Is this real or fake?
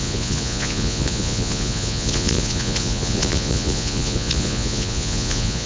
fake